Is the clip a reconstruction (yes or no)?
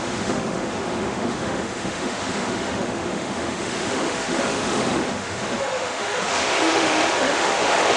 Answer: yes